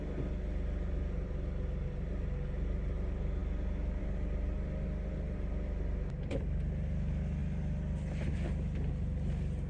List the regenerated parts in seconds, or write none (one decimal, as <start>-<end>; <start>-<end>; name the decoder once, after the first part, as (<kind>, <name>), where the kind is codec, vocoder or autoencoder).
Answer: none